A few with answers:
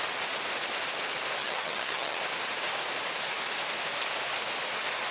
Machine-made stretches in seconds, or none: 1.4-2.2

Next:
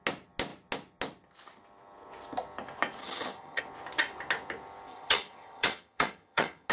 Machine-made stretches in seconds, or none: 3.0-3.6; 4.9-6.7